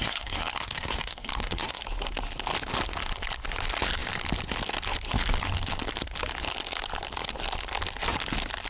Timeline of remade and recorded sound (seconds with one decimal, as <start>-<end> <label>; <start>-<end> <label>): 0.0-1.8 remade; 1.8-8.7 recorded